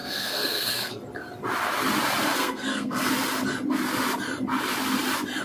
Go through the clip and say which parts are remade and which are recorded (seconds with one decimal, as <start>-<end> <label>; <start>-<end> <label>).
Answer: 0.0-1.0 remade; 1.0-2.3 recorded; 2.3-3.1 remade; 3.1-5.4 recorded